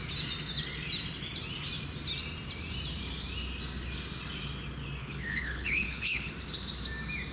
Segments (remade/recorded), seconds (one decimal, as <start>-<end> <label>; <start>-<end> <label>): 0.0-5.0 recorded; 5.0-6.3 remade; 6.3-7.3 recorded